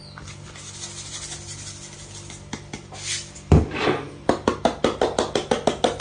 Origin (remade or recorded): recorded